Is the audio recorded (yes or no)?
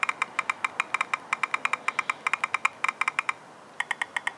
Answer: yes